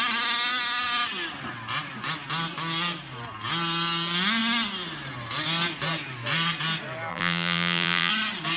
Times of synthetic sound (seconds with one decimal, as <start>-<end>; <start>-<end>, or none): 7.1-8.1